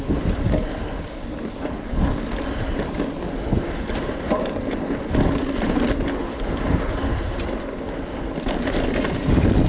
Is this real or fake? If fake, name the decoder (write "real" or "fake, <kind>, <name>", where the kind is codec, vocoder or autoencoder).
real